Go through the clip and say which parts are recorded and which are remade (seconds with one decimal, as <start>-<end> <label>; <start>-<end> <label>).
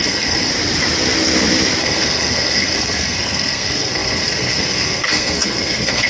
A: 0.0-0.5 remade; 0.5-1.8 recorded; 1.8-6.1 remade